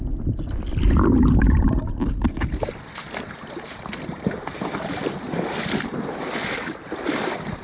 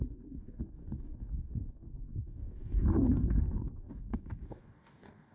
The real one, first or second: first